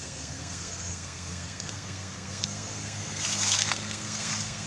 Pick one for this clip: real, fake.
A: fake